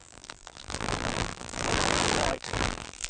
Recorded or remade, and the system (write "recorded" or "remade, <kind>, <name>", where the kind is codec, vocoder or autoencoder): remade, vocoder, BigVGAN v2